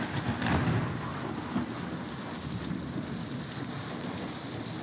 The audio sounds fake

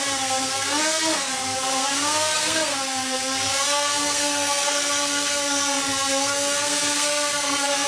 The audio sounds fake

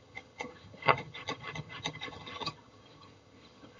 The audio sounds fake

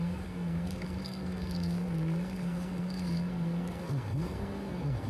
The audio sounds fake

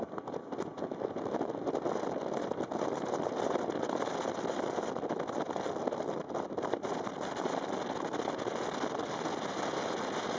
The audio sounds real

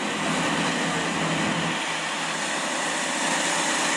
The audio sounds real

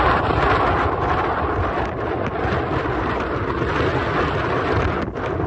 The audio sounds real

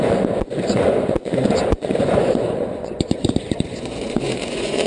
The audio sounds fake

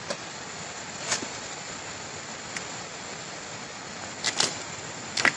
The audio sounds real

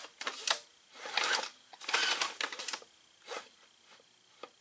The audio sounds real